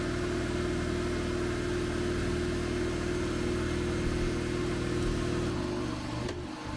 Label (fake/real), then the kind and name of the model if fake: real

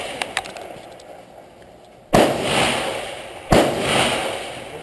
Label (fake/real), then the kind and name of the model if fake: real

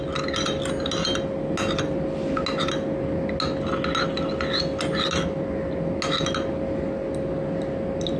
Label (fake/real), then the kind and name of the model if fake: real